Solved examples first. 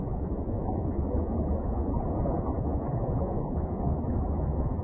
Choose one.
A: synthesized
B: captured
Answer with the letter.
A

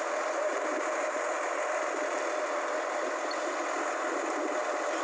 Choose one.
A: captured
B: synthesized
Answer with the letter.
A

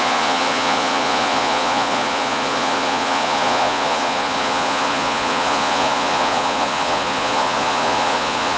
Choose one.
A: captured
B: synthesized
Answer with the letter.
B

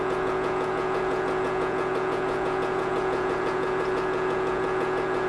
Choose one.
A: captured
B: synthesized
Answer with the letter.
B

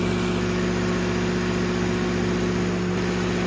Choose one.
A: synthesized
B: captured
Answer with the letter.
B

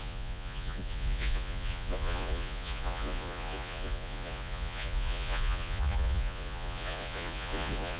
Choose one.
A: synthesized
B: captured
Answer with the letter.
A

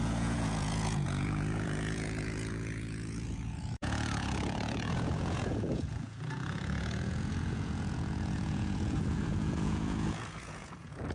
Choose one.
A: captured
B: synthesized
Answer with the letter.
B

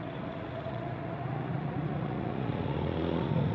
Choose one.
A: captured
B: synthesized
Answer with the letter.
B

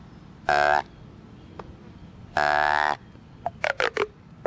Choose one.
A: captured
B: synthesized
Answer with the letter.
A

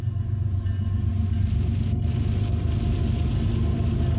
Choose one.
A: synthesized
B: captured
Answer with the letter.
B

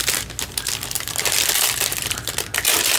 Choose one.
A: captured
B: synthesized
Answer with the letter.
A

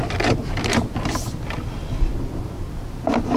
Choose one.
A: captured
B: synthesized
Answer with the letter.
A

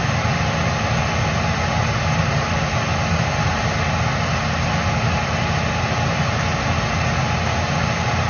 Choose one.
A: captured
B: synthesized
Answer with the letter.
A